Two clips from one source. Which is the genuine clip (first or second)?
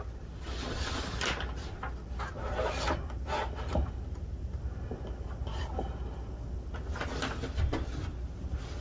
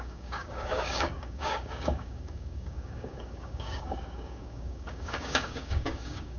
first